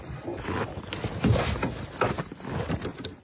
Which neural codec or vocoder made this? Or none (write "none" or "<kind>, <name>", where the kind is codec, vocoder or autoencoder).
none